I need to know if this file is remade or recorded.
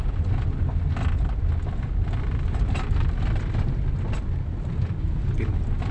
recorded